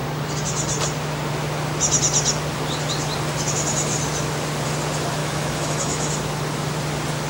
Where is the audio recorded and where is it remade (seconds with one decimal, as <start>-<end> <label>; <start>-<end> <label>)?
0.0-5.2 recorded; 5.2-6.1 remade; 6.1-7.3 recorded